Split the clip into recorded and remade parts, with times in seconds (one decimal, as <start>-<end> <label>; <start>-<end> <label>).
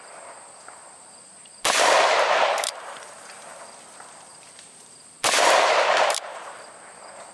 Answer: 0.0-0.8 recorded; 0.8-3.6 remade; 3.6-4.3 recorded; 4.3-6.7 remade; 6.7-7.3 recorded